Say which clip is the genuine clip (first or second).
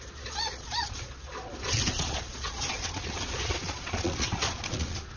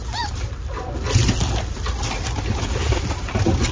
second